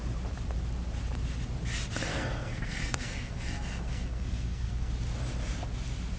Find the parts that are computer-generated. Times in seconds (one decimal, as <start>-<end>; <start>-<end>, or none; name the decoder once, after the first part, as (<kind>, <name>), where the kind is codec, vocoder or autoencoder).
2.1-4.9 (codec, SNAC)